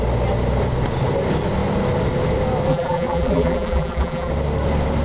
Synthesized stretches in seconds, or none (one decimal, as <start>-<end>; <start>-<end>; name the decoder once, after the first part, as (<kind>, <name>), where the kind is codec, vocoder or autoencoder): 2.7-4.3 (vocoder, BigVGAN v2)